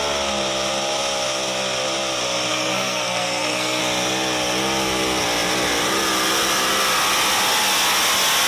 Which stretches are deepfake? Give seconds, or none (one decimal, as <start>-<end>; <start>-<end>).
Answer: 2.5-3.8